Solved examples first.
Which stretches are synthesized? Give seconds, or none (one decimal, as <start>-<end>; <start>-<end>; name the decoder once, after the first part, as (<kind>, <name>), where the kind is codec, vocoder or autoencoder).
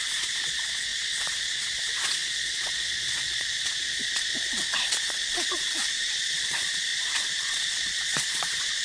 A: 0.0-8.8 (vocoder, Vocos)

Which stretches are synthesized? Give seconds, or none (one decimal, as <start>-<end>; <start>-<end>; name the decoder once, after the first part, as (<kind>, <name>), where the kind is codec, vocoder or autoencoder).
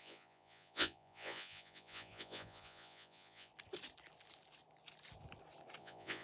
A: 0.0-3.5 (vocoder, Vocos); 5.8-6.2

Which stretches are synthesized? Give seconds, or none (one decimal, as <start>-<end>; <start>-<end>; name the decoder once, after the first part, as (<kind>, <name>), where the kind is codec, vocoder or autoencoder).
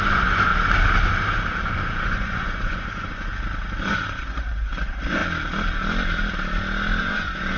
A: 0.0-0.5 (vocoder, Vocos); 1.6-3.3; 3.8-5.2; 7.0-7.6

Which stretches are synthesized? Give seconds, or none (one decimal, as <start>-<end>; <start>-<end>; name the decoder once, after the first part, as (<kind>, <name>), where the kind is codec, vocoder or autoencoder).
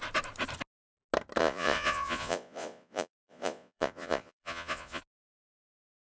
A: 1.4-5.0 (vocoder, Vocos)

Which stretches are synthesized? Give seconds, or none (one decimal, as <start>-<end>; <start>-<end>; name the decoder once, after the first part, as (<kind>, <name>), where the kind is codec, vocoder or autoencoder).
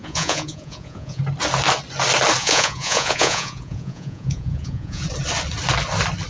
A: 0.0-1.2 (vocoder, Vocos); 2.4-5.0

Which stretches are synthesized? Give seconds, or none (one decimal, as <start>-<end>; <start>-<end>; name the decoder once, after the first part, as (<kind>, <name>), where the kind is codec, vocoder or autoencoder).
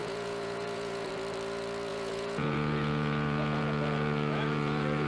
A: 0.0-1.1 (vocoder, Vocos); 1.9-5.1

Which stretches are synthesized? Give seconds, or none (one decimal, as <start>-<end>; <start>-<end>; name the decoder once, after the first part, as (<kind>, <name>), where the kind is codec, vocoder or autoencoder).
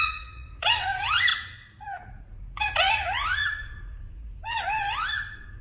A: 0.0-5.6 (vocoder, Vocos)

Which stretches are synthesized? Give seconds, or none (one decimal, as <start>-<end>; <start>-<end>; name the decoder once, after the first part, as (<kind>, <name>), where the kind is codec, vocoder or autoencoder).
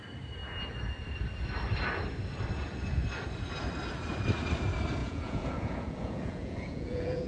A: 5.0-7.3 (vocoder, Vocos)